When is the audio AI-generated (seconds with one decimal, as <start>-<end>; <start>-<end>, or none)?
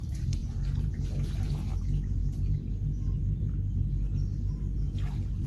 none